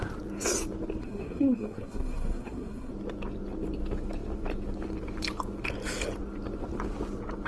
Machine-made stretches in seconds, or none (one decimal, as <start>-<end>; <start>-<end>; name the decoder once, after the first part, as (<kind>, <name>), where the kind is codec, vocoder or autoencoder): 1.0-2.9 (codec, SNAC)